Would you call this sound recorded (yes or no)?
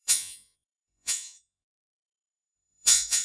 no